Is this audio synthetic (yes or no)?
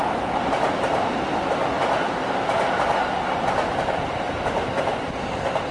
no